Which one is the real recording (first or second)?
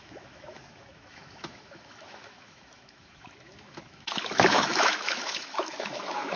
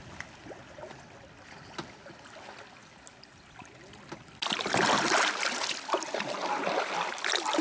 second